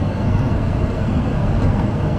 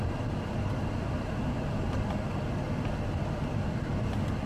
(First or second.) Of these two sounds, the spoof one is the first